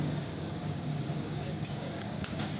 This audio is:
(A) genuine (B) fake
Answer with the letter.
B